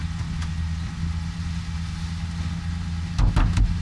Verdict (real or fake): real